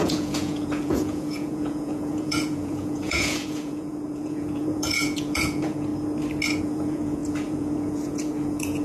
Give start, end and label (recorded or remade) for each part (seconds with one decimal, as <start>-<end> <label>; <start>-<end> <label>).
0.0-5.9 remade; 5.9-6.6 recorded; 6.6-8.8 remade